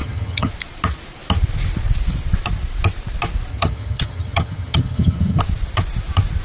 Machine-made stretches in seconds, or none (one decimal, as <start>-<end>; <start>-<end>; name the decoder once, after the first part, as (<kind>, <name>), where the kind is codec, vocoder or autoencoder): 0.0-0.5 (vocoder, HiFi-GAN); 3.5-5.4